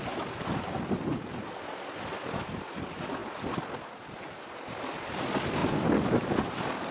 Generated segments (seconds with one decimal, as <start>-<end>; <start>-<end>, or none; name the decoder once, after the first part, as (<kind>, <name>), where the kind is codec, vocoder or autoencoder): none